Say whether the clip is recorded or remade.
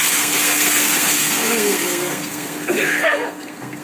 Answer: remade